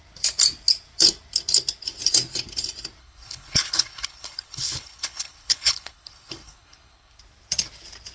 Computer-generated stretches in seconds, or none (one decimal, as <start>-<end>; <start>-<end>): 3.0-7.2